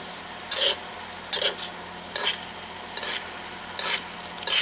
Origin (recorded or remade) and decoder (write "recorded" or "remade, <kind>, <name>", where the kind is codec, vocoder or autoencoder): recorded